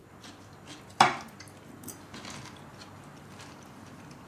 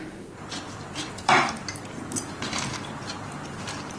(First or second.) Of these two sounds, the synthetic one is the second